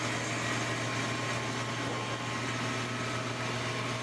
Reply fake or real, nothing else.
real